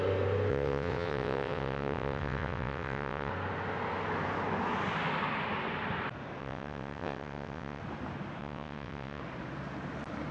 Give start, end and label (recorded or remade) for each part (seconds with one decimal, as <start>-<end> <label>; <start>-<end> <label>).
0.0-0.5 recorded; 0.5-3.3 remade; 3.3-6.4 recorded; 6.4-7.8 remade; 7.8-8.4 recorded; 8.4-9.2 remade; 9.2-10.3 recorded